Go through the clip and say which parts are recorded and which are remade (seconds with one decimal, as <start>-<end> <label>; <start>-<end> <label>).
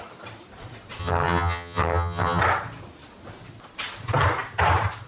0.0-1.0 recorded; 1.0-2.4 remade; 2.4-5.1 recorded